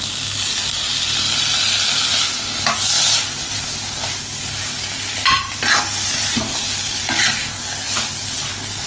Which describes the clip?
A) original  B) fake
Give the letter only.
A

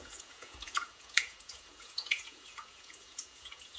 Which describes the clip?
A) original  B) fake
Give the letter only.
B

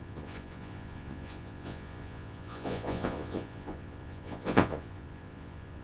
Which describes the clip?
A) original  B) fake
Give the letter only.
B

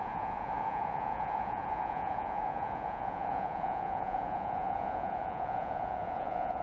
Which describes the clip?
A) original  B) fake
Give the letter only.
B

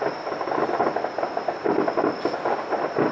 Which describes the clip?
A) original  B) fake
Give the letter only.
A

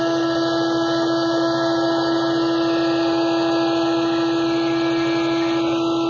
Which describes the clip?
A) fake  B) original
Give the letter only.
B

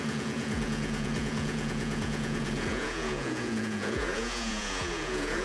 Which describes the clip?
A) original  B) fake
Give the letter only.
B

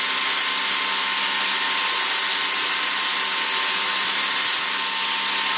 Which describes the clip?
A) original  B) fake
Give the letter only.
A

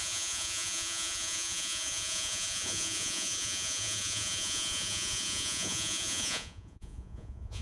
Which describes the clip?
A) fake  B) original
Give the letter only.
A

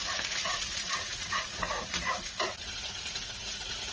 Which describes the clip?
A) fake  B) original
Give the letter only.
A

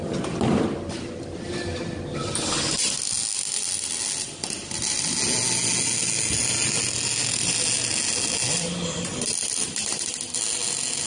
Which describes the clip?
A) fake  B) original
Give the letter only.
B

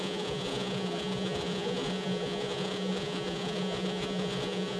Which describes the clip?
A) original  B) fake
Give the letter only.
B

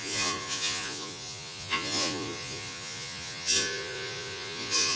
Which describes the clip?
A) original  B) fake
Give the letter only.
B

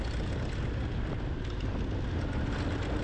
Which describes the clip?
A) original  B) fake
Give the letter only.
A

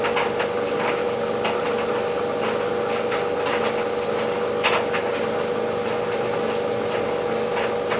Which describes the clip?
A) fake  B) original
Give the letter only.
B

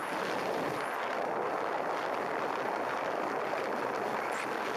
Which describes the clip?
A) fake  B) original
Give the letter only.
B